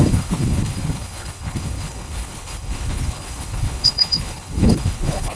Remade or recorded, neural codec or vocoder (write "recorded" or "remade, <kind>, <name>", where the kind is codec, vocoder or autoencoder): remade, codec, HILCodec